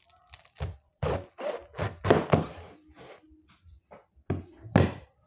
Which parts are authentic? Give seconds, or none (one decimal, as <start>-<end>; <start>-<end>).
0.0-5.3